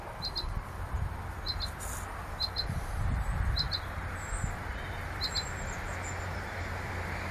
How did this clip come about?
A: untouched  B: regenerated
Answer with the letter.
A